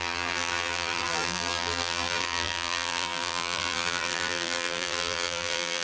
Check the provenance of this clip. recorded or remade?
remade